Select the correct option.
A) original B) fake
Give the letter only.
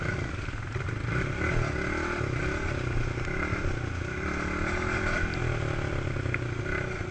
A